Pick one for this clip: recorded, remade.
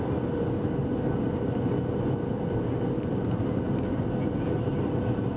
recorded